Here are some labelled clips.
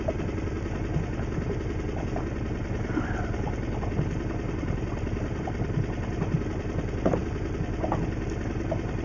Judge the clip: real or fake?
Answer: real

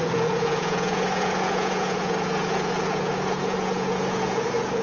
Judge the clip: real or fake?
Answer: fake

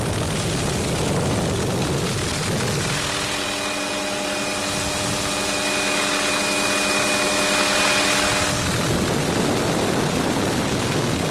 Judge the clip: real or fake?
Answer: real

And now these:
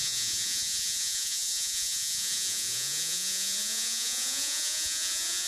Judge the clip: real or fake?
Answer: fake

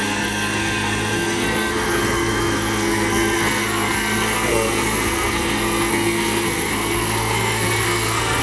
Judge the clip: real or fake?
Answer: fake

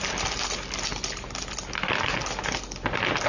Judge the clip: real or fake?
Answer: real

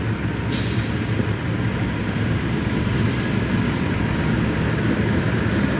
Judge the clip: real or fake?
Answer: real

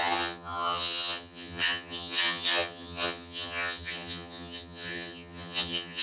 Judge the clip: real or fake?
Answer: fake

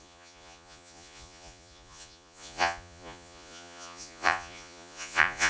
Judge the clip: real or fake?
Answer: fake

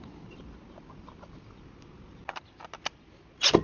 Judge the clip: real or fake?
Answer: real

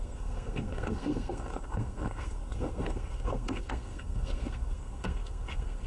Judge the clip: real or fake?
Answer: fake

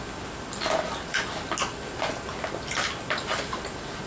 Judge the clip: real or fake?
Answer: real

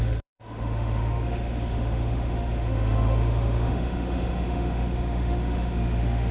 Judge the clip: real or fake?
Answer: fake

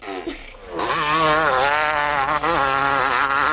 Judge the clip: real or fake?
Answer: real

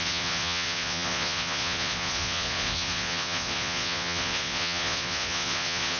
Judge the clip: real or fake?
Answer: fake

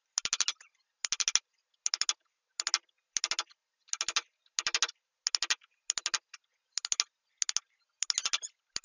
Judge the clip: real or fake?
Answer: real